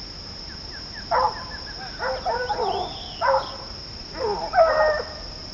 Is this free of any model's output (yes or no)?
yes